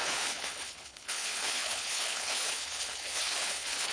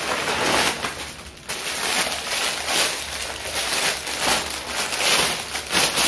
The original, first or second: second